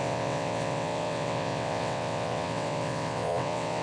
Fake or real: fake